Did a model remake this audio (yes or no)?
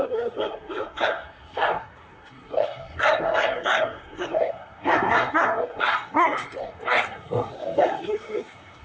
yes